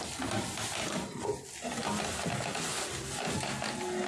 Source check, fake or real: real